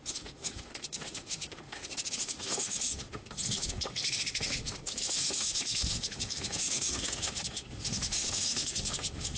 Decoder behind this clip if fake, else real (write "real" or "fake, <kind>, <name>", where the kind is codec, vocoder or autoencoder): fake, autoencoder, DAC-VAE